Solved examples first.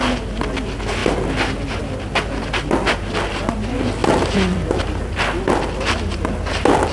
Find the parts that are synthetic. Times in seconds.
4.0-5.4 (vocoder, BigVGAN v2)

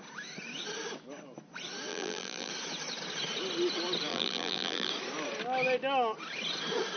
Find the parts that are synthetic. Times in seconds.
1.9-2.5 (vocoder, BigVGAN v2); 4.1-4.9

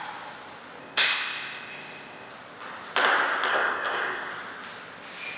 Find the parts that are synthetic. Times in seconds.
0.8-2.3 (codec, ZipCodec); 3.5-4.3